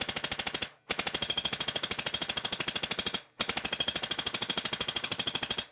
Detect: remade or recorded recorded